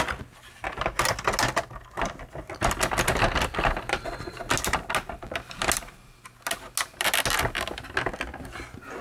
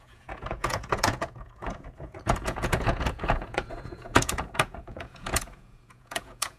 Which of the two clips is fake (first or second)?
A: second